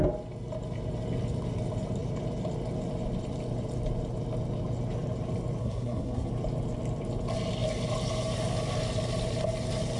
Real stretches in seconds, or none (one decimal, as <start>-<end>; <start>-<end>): 0.0-5.6; 6.3-10.0